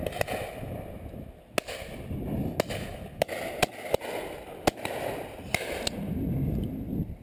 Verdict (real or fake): real